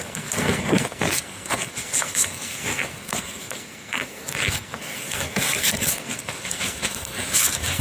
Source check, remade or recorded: remade